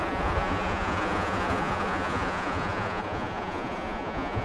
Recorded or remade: remade